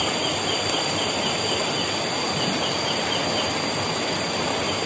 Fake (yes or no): no